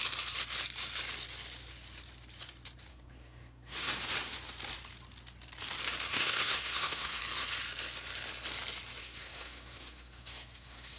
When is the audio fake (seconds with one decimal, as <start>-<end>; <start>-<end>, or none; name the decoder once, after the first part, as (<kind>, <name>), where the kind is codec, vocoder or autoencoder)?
2.9-3.9 (codec, SNAC); 6.1-7.2; 9.0-11.0